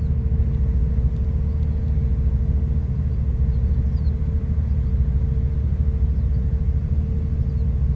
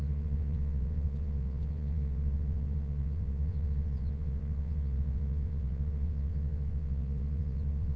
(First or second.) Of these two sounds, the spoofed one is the second